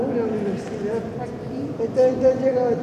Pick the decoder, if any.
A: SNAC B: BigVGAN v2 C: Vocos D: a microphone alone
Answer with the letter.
B